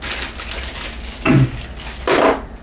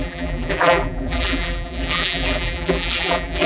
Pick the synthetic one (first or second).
second